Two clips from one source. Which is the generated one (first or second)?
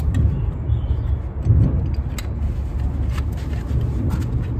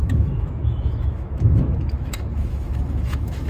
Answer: second